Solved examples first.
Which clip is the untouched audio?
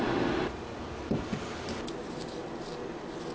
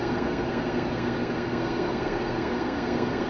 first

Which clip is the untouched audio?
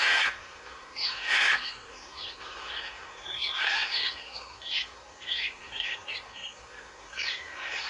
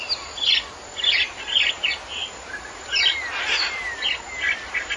second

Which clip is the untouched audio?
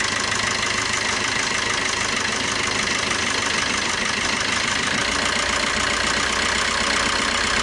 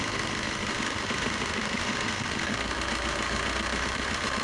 first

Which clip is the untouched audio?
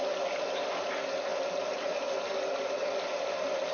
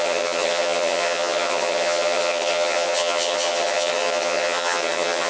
first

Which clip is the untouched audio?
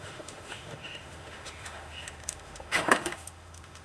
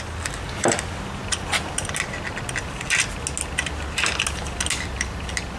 second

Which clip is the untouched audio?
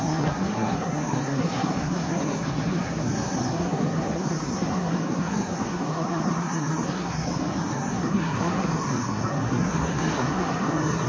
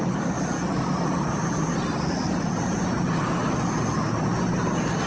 second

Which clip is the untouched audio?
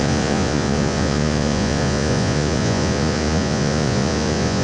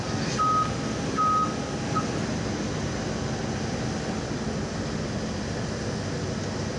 second